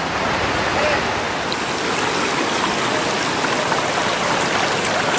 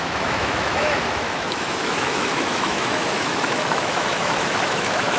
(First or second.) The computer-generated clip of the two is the second